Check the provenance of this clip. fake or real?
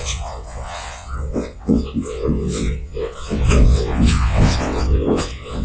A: fake